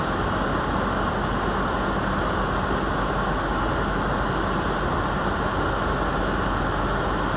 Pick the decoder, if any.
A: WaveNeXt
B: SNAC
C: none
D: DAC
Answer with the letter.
C